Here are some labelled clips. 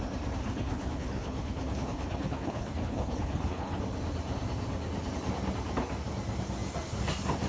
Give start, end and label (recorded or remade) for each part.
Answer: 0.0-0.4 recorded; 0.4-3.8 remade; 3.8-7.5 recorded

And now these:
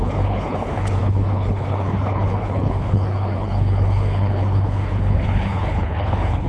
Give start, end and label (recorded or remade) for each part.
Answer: 0.0-6.5 remade

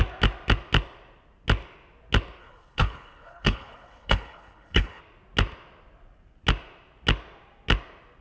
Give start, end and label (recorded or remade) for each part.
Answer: 0.0-2.4 recorded; 2.4-5.0 remade; 5.0-8.2 recorded

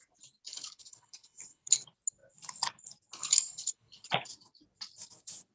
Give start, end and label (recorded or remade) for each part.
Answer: 0.0-0.5 recorded; 0.5-1.7 remade; 1.7-3.2 recorded; 3.2-4.1 remade; 4.1-5.5 recorded

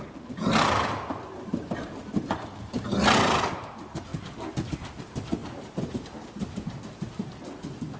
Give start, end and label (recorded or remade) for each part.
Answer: 0.0-8.0 recorded

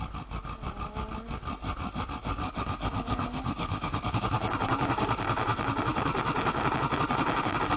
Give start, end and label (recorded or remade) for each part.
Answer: 0.0-2.4 recorded; 2.4-4.2 remade; 4.2-7.8 recorded

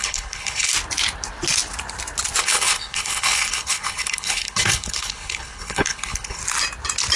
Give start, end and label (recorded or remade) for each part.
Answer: 0.0-0.7 remade; 0.7-2.4 recorded; 2.4-6.4 remade; 6.4-7.2 recorded

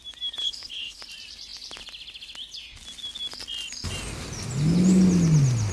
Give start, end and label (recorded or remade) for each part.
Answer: 0.0-0.4 recorded; 0.4-1.0 remade; 1.0-5.7 recorded